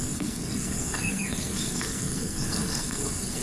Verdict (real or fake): fake